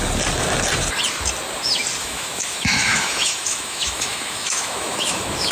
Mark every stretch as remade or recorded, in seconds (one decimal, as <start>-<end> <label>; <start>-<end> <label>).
0.0-2.0 recorded; 2.0-5.5 remade